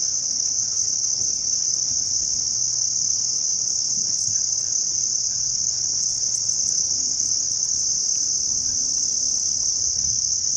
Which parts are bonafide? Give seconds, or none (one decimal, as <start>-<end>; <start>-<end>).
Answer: 7.8-9.7